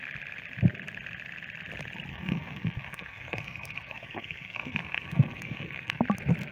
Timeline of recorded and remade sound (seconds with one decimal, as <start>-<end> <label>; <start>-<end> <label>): 0.0-2.1 recorded; 2.1-6.0 remade; 6.0-6.5 recorded